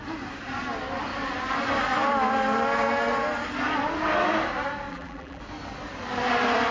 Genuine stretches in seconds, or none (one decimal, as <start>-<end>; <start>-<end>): 0.0-4.9; 5.4-6.7